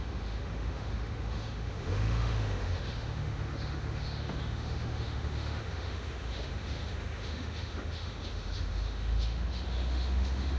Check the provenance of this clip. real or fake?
fake